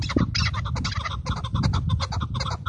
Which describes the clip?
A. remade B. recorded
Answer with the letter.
B